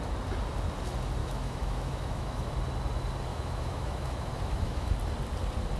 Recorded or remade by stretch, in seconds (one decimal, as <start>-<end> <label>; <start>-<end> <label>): 0.0-1.2 recorded; 1.2-2.5 remade; 2.5-3.3 recorded; 3.3-4.9 remade; 4.9-5.8 recorded